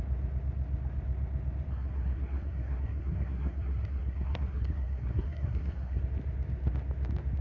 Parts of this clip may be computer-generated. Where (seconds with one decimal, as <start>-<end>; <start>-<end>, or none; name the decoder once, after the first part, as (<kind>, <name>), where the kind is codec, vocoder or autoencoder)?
1.7-6.0 (codec, SNAC)